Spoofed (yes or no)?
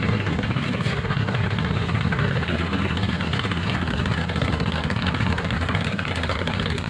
yes